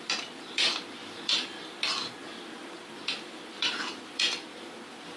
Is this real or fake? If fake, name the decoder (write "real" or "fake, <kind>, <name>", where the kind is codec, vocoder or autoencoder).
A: fake, vocoder, BigVGAN v2